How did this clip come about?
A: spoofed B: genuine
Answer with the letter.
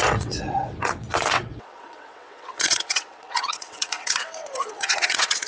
A